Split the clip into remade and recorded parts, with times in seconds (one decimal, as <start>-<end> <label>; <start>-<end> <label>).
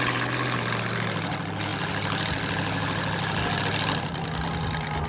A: 0.0-5.1 recorded